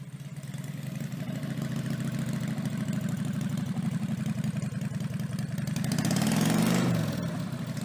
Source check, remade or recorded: recorded